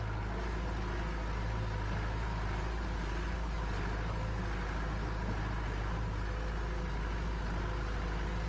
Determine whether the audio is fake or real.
real